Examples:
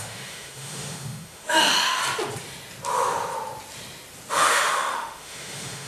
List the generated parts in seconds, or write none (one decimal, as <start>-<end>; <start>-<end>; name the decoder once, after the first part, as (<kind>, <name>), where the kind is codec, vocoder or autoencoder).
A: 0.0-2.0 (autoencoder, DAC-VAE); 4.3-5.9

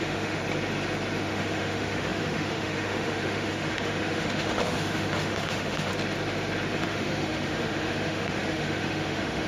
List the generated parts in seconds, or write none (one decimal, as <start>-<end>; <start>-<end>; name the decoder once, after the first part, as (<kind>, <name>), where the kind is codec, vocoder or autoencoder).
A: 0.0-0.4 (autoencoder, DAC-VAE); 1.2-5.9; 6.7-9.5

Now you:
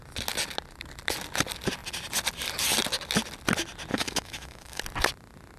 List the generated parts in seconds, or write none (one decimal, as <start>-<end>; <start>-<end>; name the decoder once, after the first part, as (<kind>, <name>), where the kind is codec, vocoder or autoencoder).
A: 3.9-4.8 (autoencoder, DAC-VAE)